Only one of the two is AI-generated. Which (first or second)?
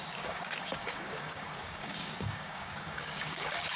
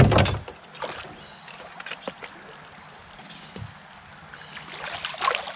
first